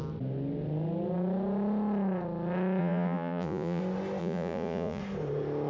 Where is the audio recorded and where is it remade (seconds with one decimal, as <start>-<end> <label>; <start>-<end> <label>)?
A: 0.0-2.8 recorded; 2.8-3.8 remade; 3.8-4.2 recorded; 4.2-5.0 remade; 5.0-5.7 recorded

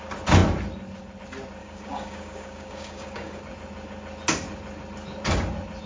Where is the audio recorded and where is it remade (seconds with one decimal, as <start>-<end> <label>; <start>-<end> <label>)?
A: 0.0-1.6 recorded; 1.6-3.4 remade; 3.4-5.9 recorded